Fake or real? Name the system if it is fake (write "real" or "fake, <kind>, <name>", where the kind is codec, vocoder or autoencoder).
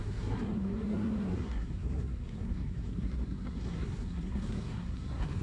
fake, codec, SNAC